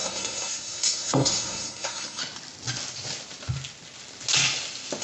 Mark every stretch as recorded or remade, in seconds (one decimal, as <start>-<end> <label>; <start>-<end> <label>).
0.0-2.2 remade; 2.2-5.0 recorded